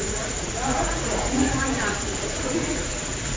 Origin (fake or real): fake